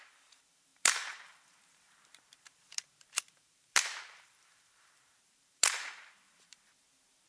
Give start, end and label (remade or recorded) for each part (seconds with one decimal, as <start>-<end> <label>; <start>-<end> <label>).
0.0-7.3 remade